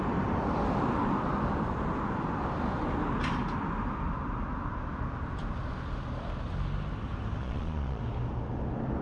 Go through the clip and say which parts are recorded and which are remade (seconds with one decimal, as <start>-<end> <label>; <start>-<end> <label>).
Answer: 0.0-7.4 recorded; 7.4-8.0 remade; 8.0-9.0 recorded